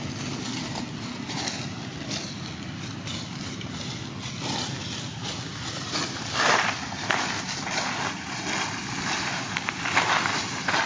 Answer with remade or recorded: recorded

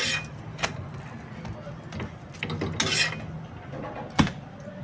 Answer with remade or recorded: recorded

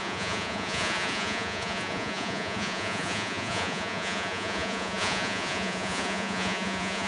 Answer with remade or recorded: remade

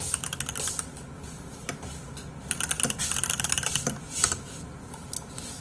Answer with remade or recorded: recorded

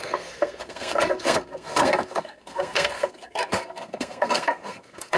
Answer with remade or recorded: remade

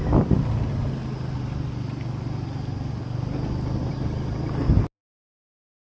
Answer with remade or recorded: recorded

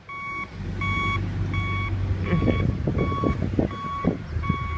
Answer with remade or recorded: recorded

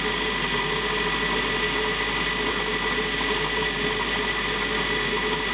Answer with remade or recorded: recorded